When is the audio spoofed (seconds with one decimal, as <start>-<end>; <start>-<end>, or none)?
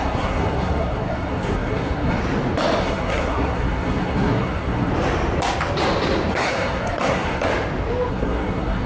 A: 0.0-2.2; 2.8-4.9; 6.3-7.5; 8.1-8.9